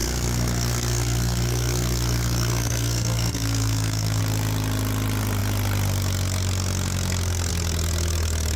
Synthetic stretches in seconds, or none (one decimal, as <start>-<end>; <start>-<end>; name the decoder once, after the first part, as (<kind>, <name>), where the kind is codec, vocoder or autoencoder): 0.0-4.2 (codec, SNAC)